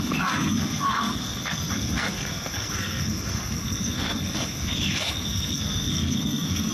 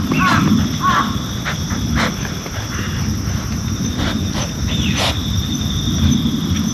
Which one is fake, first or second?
first